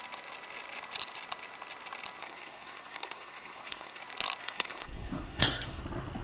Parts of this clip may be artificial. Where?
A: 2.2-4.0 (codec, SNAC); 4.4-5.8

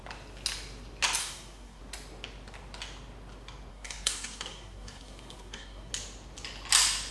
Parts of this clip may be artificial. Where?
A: 1.2-1.8 (codec, SNAC); 3.7-5.9

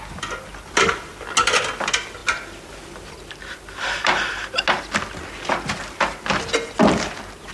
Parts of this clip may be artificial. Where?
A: none

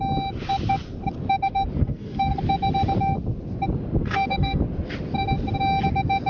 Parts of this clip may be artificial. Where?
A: 1.8-2.4 (codec, SNAC); 4.0-4.6

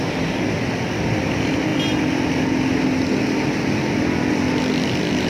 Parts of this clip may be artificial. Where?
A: none

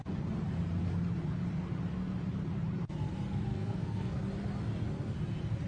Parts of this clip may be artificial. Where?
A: 3.5-4.2 (codec, SNAC)